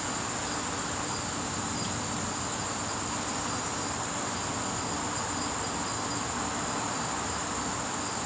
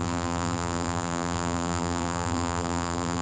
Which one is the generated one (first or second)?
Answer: second